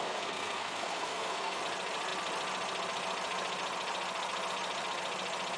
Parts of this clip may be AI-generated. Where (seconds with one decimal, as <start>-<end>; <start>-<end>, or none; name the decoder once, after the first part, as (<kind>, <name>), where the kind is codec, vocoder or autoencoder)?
0.0-1.6 (codec, SNAC)